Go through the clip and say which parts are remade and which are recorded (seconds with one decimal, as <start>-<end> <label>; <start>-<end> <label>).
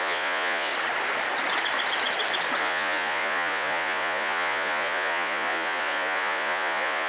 0.0-0.7 remade; 0.7-2.6 recorded; 2.6-7.1 remade